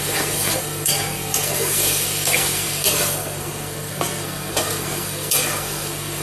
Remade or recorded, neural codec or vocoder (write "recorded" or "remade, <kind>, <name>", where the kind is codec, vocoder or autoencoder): remade, codec, SNAC